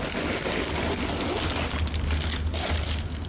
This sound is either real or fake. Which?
real